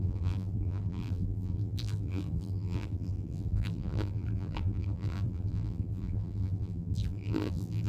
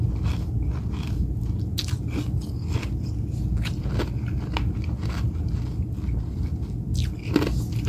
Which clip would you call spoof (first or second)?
first